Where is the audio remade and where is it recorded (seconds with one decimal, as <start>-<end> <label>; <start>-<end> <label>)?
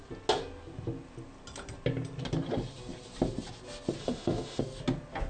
0.0-4.0 recorded; 4.0-4.6 remade; 4.6-5.3 recorded